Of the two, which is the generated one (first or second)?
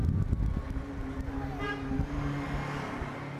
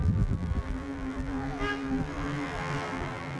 second